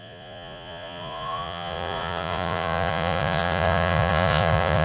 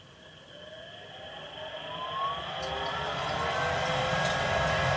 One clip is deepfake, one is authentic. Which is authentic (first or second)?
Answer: second